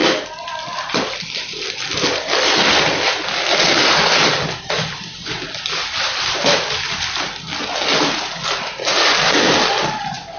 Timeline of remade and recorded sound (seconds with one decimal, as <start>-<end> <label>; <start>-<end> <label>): 0.0-10.4 recorded